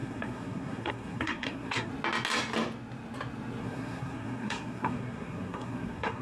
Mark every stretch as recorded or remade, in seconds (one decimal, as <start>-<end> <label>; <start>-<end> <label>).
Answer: 0.0-1.9 remade; 1.9-3.6 recorded; 3.6-6.2 remade